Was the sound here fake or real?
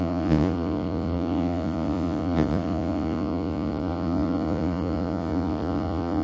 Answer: fake